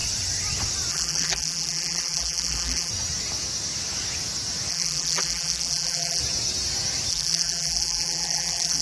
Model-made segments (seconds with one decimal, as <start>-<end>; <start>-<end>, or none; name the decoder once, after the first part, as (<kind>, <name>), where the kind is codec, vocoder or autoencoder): 0.9-2.9 (vocoder, BigVGAN v2); 4.7-6.2; 7.1-8.8

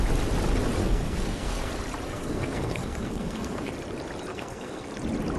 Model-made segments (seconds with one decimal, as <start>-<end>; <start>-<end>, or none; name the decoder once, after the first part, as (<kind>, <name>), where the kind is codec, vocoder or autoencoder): 0.8-1.7 (codec, SNAC); 2.1-3.7; 4.3-4.9

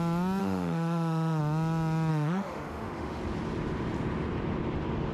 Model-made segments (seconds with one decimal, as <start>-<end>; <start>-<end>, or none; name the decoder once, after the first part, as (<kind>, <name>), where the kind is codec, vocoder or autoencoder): 0.4-1.4 (autoencoder, DAC-VAE); 2.1-3.2

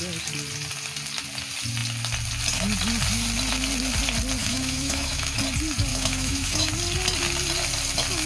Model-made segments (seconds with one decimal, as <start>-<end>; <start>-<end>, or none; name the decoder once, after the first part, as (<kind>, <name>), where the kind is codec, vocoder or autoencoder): 4.4-5.4 (autoencoder, DAC-VAE); 5.9-6.7

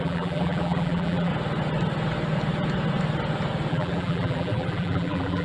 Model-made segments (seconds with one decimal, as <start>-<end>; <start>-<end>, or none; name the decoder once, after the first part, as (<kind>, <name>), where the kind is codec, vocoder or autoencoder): 0.0-1.3 (vocoder, BigVGAN v2); 3.7-5.4